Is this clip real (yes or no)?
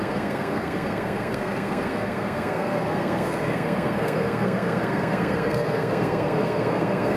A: no